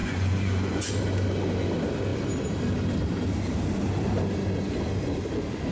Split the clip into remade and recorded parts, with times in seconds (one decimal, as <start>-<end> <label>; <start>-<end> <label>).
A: 0.0-0.9 remade; 0.9-5.7 recorded